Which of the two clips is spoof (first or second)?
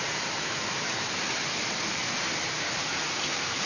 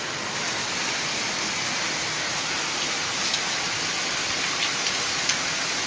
first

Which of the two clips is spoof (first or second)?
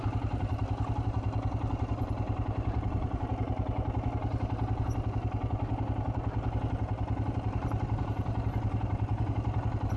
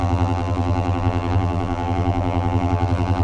second